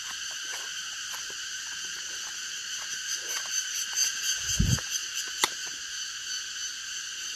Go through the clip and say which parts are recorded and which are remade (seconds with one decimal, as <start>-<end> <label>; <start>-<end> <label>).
0.0-0.5 remade; 0.5-2.9 recorded; 2.9-4.0 remade; 4.0-4.6 recorded; 4.6-5.0 remade; 5.0-7.0 recorded; 7.0-7.4 remade